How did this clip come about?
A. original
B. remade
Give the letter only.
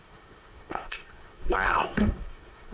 B